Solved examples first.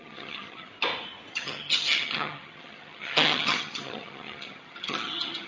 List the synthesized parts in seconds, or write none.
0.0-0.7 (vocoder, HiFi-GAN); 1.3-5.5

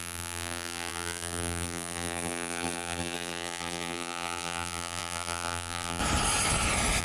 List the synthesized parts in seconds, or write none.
0.0-6.0 (vocoder, BigVGAN v2)

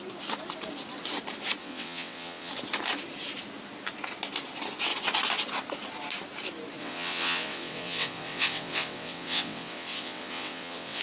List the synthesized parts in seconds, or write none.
1.6-2.5 (vocoder, WaveNeXt); 6.8-11.0

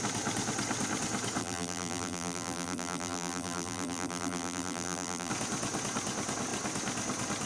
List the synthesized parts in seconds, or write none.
1.4-5.3 (vocoder, BigVGAN v2)